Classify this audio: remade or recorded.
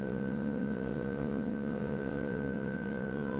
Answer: remade